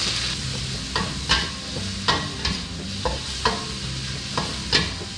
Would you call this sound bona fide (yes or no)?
yes